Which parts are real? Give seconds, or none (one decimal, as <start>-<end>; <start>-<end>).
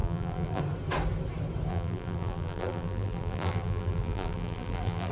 0.6-1.7